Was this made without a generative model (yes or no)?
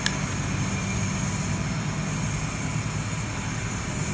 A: yes